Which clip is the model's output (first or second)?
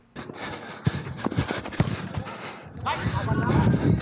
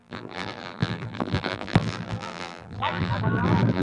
second